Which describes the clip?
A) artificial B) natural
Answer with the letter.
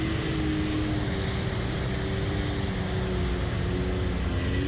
B